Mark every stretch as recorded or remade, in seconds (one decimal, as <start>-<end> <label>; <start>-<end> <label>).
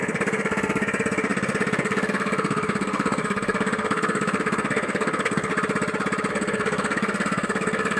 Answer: 0.0-5.5 remade; 5.5-6.3 recorded; 6.3-8.0 remade